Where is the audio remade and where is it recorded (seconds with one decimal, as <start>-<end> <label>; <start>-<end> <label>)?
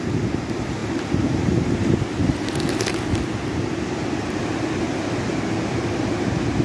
0.0-6.6 recorded